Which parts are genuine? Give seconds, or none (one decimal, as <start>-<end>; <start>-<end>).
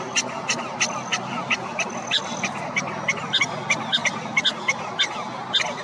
0.0-1.1; 3.2-5.8